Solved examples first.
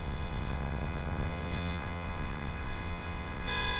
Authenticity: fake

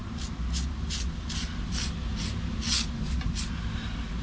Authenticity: real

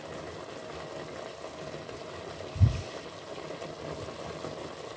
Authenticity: real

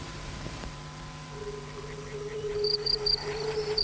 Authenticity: fake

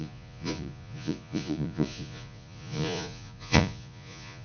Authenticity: fake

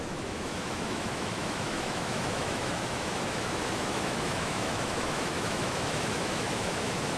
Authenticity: fake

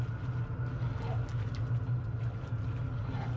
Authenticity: real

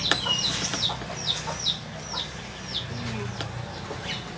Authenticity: real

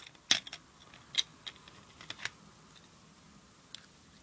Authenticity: real